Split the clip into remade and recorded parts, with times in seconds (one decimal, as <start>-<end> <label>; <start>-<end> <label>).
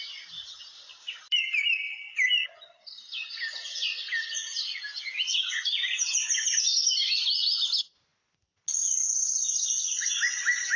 0.0-1.0 recorded; 1.0-1.6 remade; 1.6-10.8 recorded